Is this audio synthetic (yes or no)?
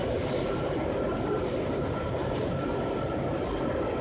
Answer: no